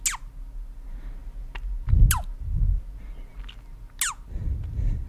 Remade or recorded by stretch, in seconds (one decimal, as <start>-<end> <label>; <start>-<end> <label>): 0.0-5.1 recorded